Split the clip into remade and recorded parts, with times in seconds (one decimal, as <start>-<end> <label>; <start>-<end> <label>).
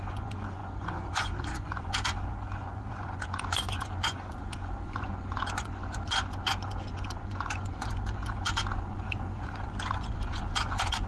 0.0-11.1 remade